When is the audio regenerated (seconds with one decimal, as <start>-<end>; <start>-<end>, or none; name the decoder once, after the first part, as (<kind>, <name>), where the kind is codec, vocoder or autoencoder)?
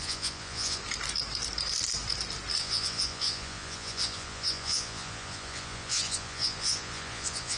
0.0-0.8 (vocoder, Vocos); 2.6-7.6